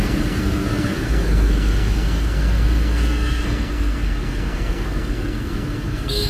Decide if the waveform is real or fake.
fake